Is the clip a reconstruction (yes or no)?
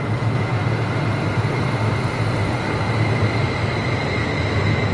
no